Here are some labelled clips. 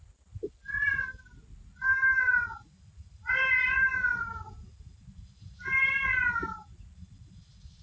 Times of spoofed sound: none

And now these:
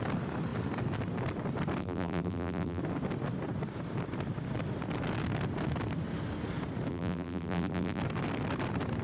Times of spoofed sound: 1.8-2.8 (vocoder, BigVGAN v2); 6.9-8.0

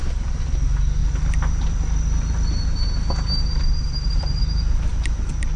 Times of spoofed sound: 1.0-4.4 (vocoder, BigVGAN v2); 4.9-5.6

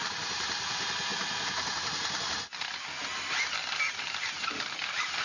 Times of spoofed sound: 0.0-1.1 (vocoder, BigVGAN v2); 4.0-5.2

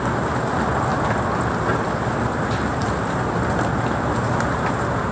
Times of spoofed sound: none

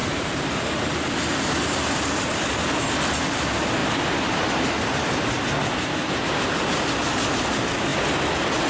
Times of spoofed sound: 0.0-0.7 (vocoder, BigVGAN v2)

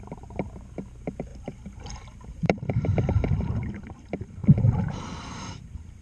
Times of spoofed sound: 1.3-3.8 (vocoder, BigVGAN v2)